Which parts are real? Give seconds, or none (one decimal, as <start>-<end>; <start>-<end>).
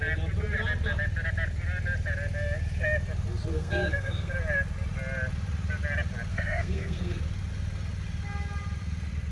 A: 0.0-3.5; 4.3-6.3; 7.2-9.3